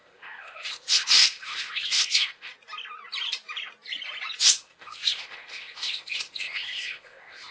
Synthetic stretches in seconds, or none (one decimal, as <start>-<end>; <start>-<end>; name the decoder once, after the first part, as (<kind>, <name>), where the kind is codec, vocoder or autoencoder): 0.0-2.5 (codec, ZipCodec); 4.4-7.5